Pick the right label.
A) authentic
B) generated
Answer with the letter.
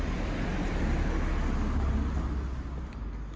A